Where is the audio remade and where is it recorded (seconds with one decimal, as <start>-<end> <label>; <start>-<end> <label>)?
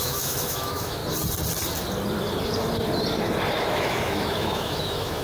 0.0-1.0 remade; 1.0-3.6 recorded; 3.6-5.2 remade